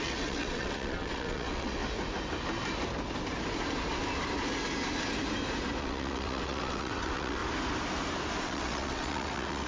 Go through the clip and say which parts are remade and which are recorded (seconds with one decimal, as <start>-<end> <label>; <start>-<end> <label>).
0.0-1.8 remade; 1.8-5.8 recorded; 5.8-7.4 remade; 7.4-8.4 recorded; 8.4-9.7 remade